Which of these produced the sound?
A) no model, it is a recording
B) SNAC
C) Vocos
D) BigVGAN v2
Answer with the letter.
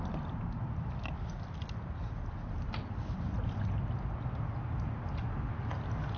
A